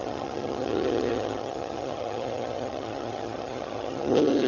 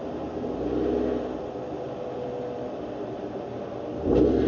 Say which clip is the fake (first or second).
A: first